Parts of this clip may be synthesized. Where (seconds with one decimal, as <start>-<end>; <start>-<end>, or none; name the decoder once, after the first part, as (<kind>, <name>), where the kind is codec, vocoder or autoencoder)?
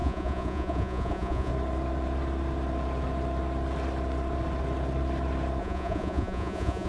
0.0-1.5 (vocoder, Vocos); 5.6-6.9